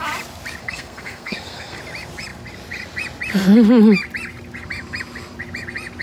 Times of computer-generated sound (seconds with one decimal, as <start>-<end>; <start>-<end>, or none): 0.6-1.8